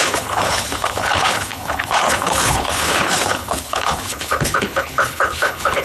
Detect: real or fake fake